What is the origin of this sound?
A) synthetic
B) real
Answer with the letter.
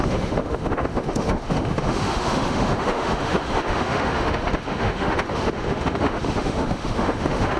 A